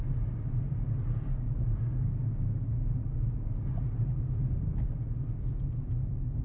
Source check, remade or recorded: recorded